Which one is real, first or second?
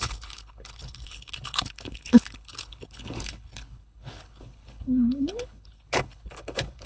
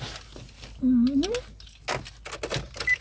second